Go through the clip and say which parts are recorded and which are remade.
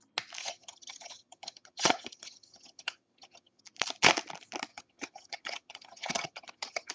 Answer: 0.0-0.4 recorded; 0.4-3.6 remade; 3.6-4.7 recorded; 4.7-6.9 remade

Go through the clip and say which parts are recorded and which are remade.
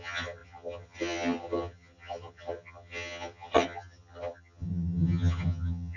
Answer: 0.0-6.0 remade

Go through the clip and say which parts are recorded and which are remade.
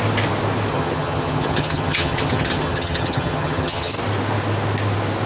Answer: 0.0-0.7 recorded; 0.7-3.9 remade; 3.9-5.3 recorded